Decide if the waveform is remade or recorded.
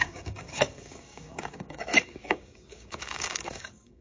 remade